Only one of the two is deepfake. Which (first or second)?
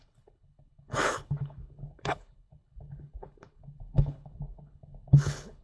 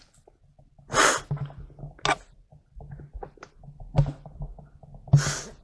first